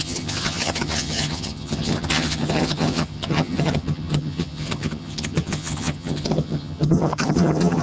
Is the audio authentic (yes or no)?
no